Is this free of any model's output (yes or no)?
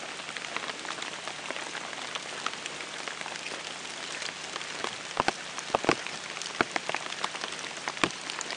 yes